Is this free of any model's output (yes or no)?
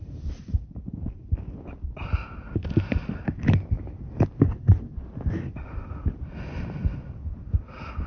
yes